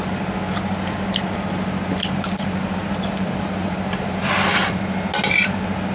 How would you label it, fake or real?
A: real